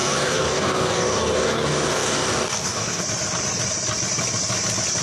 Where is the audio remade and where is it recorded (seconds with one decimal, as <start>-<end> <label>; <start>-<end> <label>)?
0.0-3.0 remade; 3.0-5.0 recorded